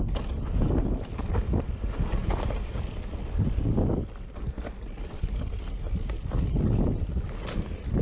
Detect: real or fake real